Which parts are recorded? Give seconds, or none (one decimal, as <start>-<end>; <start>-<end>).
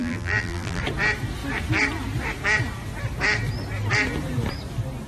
0.8-5.1